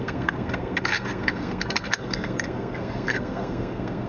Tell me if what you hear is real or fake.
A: fake